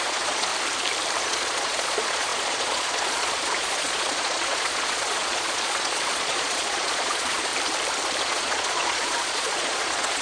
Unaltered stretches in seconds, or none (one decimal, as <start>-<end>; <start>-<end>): 0.5-1.2; 7.5-8.2